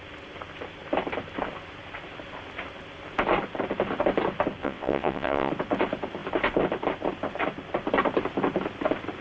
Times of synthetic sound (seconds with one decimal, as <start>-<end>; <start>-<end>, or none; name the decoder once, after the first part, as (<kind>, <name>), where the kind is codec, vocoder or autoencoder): 4.6-5.5 (vocoder, WaveNeXt)